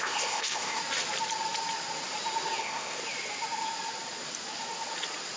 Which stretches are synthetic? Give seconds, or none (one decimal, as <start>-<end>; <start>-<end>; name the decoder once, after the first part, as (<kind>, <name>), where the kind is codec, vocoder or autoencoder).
0.0-0.8 (codec, ZipCodec); 2.6-3.0